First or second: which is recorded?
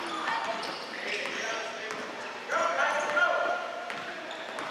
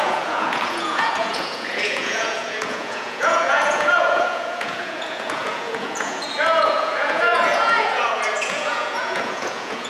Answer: first